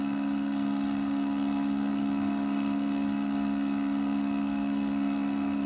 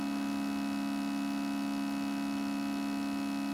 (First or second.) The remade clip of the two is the first